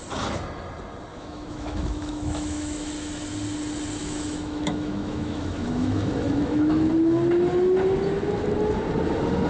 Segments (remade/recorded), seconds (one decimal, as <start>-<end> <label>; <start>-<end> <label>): 0.0-1.1 recorded; 1.1-2.9 remade; 2.9-4.0 recorded; 4.0-6.9 remade; 6.9-9.5 recorded